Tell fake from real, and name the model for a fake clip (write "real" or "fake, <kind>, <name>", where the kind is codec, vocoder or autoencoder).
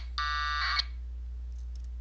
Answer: real